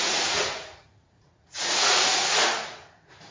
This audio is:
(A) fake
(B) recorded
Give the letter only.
A